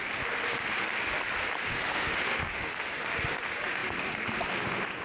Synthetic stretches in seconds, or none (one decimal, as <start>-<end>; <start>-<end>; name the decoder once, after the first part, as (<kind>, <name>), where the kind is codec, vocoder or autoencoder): 1.7-2.8 (autoencoder, DAC-VAE)